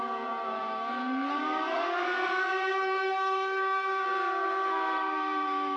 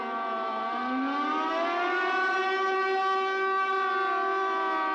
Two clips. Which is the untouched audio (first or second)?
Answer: second